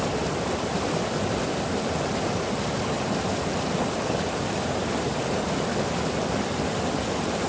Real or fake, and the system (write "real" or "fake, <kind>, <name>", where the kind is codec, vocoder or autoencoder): real